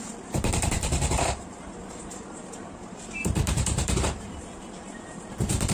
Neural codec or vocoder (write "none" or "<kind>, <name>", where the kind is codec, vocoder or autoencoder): vocoder, BigVGAN v2